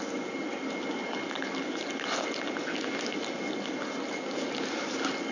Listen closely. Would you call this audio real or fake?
real